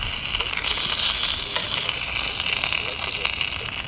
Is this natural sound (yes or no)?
yes